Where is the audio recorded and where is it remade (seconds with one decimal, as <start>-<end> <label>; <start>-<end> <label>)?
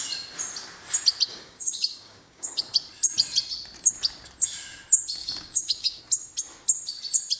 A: 0.0-1.3 recorded; 1.3-2.6 remade; 2.6-5.2 recorded; 5.2-6.0 remade; 6.0-7.4 recorded